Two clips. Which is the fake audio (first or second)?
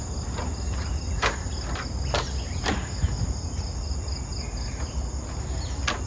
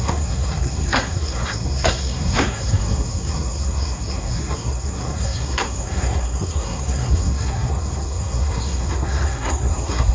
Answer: second